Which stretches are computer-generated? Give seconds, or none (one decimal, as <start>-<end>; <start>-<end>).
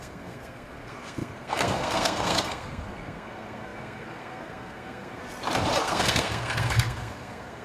0.0-5.2; 5.8-7.6